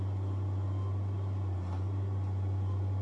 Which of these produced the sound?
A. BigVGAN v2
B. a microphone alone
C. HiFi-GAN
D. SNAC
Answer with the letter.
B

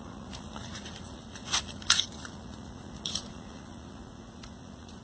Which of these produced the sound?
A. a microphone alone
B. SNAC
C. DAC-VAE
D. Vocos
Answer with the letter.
D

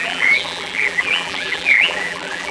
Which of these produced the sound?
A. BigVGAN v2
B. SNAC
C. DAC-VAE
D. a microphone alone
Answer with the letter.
A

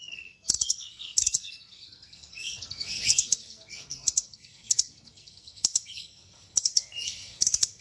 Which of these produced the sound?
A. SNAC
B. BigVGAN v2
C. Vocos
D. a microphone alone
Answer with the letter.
A